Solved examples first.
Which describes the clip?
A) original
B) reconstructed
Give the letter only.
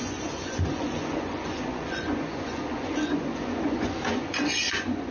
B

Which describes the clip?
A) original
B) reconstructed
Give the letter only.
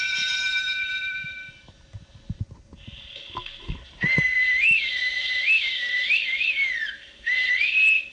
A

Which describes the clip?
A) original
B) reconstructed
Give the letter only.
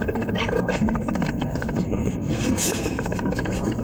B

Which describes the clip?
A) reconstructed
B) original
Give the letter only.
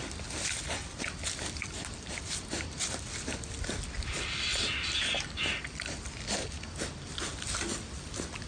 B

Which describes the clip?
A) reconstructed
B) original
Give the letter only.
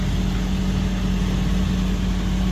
B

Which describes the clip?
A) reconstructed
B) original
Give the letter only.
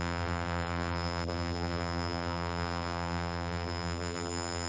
A